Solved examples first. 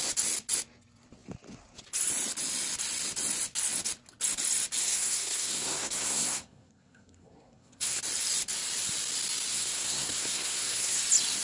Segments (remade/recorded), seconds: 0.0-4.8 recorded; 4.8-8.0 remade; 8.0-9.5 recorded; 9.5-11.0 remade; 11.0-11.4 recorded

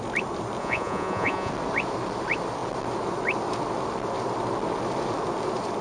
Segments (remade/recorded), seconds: 0.0-0.6 recorded; 0.6-1.5 remade; 1.5-5.8 recorded

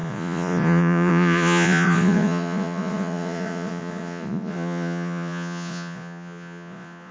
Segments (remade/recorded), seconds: 0.0-7.1 remade

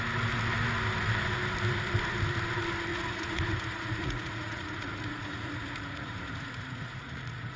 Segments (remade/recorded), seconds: 0.0-2.9 recorded; 2.9-7.6 remade

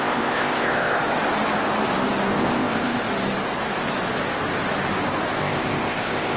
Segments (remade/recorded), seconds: 0.0-1.0 remade; 1.0-2.3 recorded; 2.3-3.1 remade; 3.1-5.4 recorded; 5.4-6.4 remade